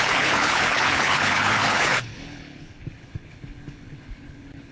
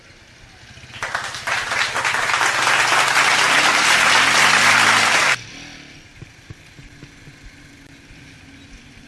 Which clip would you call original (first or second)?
second